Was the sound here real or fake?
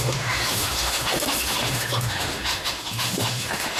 fake